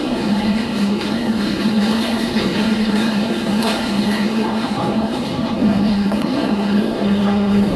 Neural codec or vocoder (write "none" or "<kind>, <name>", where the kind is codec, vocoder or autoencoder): codec, SNAC